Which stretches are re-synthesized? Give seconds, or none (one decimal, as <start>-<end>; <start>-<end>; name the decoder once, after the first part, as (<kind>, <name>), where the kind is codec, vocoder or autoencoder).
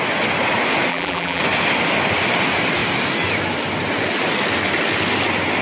0.9-1.4 (vocoder, BigVGAN v2)